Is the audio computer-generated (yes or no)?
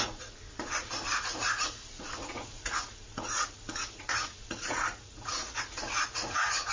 yes